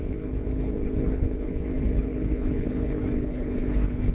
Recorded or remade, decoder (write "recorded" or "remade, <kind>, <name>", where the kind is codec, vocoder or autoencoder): remade, codec, HILCodec